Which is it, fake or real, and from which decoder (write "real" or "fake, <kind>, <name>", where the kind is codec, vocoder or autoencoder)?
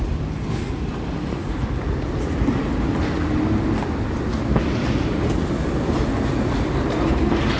real